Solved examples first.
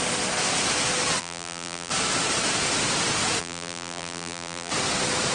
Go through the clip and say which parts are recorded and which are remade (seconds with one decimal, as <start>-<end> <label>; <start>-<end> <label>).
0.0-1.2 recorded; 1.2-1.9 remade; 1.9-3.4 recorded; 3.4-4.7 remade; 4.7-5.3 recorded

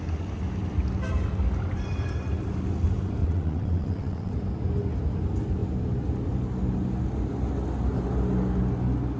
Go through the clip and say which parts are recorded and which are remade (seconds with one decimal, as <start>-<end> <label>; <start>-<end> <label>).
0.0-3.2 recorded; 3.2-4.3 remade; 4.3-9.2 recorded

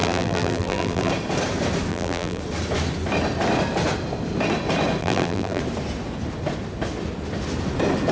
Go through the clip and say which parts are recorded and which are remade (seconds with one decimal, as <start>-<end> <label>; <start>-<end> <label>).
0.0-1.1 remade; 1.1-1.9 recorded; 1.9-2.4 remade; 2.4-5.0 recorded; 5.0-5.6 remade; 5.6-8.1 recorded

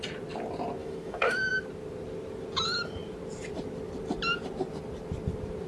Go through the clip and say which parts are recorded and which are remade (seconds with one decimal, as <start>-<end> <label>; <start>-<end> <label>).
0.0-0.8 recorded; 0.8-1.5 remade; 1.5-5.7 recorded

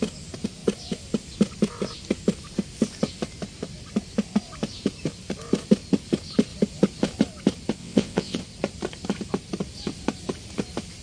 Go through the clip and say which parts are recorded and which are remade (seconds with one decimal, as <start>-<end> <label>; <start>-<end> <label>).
0.0-7.8 recorded; 7.8-8.4 remade; 8.4-11.0 recorded

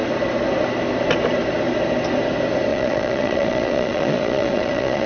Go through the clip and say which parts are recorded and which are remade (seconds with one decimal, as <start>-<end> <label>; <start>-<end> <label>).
0.0-2.7 recorded; 2.7-5.1 remade

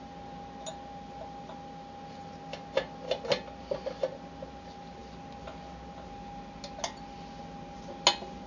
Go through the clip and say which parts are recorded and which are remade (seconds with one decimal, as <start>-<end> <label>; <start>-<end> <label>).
0.0-8.5 recorded